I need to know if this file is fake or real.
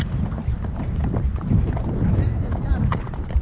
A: fake